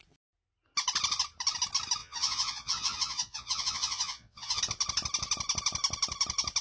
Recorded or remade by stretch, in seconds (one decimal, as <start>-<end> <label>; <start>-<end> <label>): 0.0-2.0 recorded; 2.0-4.6 remade; 4.6-6.6 recorded